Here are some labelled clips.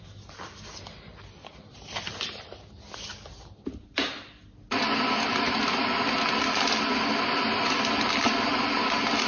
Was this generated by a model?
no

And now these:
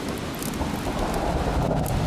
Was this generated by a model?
no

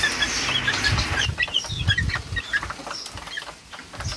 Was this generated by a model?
no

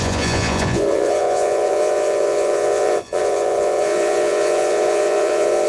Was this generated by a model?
yes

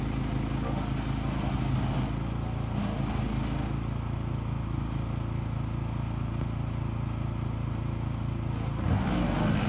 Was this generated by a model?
no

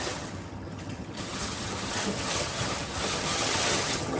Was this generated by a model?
yes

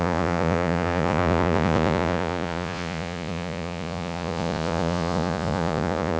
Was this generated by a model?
yes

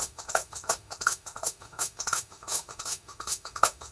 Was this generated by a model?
yes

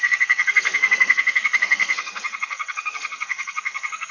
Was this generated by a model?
yes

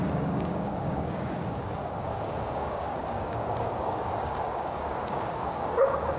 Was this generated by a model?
yes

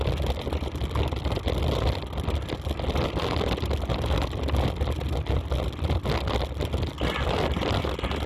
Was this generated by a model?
no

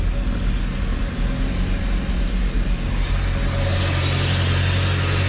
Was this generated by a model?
no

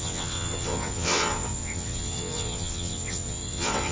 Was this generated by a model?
yes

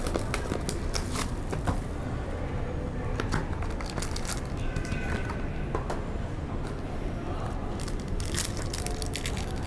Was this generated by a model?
no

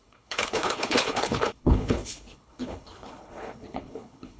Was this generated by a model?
yes